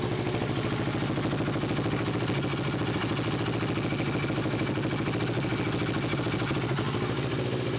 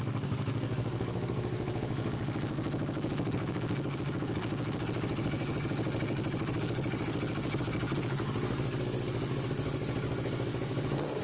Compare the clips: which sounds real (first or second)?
first